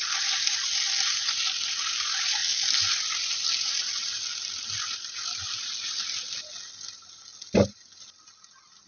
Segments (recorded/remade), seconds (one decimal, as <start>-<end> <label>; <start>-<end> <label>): 0.0-8.9 recorded